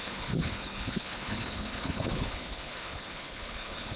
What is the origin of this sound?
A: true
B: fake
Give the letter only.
B